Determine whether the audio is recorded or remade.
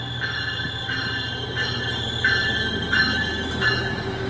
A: recorded